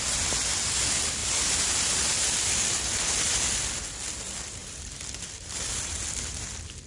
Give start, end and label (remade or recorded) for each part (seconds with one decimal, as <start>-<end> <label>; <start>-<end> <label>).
0.0-1.2 recorded; 1.2-3.7 remade; 3.7-4.6 recorded; 4.6-6.2 remade; 6.2-6.9 recorded